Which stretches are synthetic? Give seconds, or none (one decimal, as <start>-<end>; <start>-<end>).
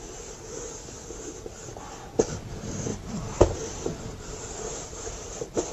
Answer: 2.9-5.3